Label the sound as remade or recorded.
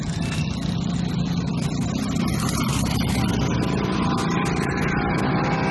recorded